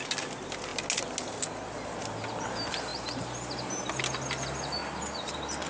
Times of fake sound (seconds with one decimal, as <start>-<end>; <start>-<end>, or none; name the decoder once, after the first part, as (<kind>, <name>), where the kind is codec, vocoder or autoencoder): none